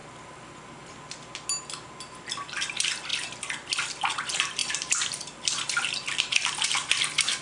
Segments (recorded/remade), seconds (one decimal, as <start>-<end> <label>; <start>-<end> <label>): 0.0-4.6 recorded; 4.6-6.9 remade; 6.9-7.4 recorded